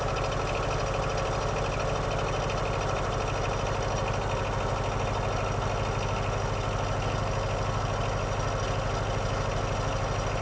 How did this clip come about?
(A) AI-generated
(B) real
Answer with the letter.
B